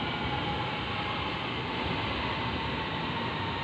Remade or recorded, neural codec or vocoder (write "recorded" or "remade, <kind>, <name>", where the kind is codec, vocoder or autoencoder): recorded